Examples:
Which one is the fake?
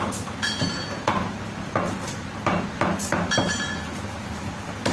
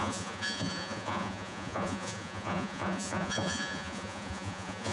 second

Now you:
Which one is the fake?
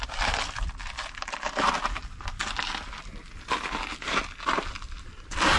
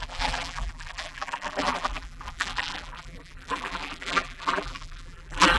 second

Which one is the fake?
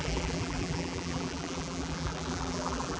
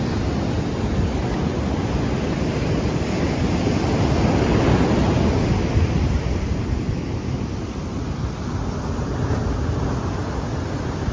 first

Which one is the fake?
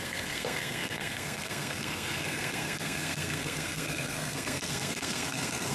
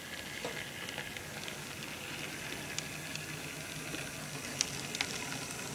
first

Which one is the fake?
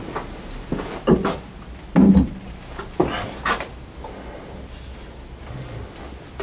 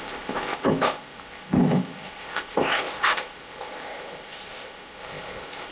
second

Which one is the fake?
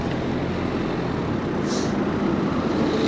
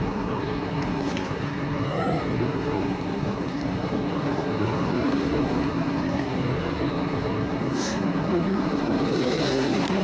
second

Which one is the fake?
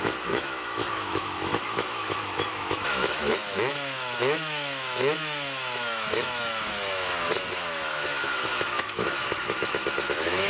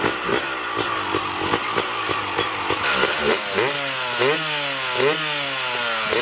first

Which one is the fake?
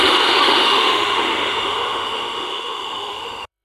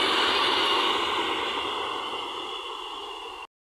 first